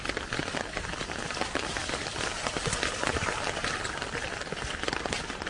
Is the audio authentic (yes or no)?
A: yes